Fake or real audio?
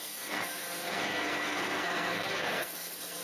fake